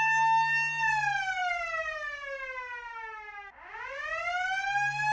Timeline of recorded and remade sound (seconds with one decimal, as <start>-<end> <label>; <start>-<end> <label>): 0.0-5.1 recorded

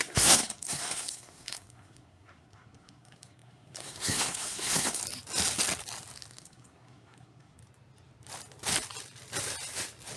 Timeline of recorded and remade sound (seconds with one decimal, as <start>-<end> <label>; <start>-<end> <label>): 0.0-5.0 remade; 5.0-6.3 recorded; 6.3-7.6 remade; 7.6-10.2 recorded

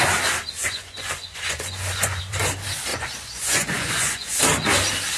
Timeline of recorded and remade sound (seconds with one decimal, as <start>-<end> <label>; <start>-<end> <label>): 0.0-0.6 recorded; 0.6-2.2 remade; 2.2-2.9 recorded; 2.9-4.4 remade; 4.4-5.2 recorded